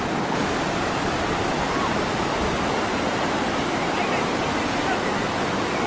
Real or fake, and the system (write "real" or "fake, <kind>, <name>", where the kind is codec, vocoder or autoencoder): real